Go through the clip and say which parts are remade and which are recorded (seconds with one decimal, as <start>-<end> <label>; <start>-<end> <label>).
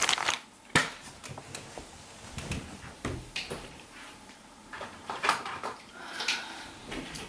0.0-2.6 recorded; 2.6-7.3 remade